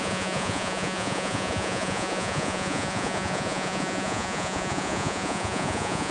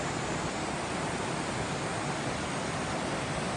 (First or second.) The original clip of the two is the second